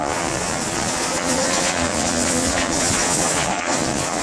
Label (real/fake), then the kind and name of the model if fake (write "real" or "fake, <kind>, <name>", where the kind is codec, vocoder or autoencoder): fake, vocoder, Vocos